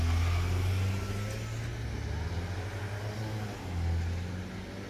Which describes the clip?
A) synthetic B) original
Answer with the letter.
B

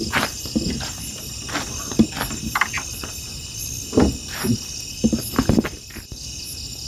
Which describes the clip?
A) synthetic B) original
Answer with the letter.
B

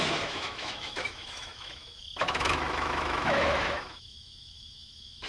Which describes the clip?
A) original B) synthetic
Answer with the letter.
B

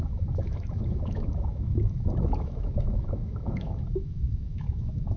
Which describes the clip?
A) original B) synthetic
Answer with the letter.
B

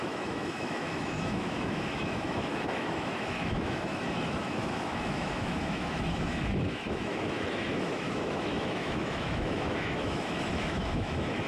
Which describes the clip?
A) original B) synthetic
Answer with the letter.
B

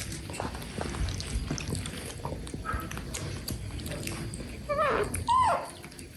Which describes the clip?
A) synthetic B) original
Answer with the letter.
B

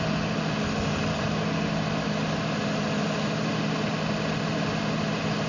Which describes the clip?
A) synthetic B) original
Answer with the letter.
B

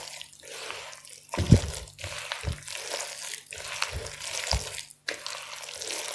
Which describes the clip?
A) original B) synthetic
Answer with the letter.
A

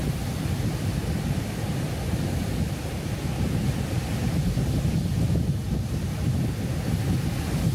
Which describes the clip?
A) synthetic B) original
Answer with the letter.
B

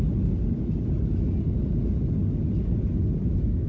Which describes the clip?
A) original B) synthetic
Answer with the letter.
A